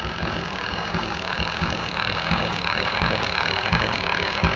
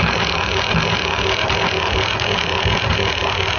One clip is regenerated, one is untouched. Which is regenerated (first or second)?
first